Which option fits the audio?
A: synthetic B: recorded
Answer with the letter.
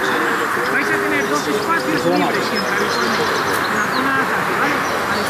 B